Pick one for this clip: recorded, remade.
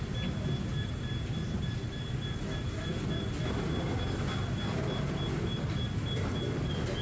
recorded